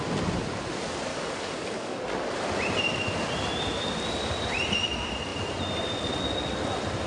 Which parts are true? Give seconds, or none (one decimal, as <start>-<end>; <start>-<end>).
0.0-1.1; 2.0-7.1